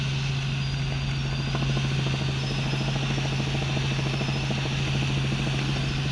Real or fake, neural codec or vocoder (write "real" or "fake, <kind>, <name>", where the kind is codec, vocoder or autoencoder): real